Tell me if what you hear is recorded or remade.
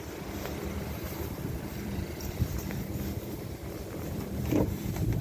remade